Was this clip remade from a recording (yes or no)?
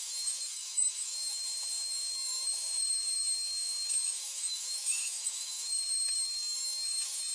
yes